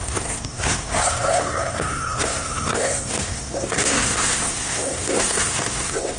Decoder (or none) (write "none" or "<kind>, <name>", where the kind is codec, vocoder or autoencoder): codec, SNAC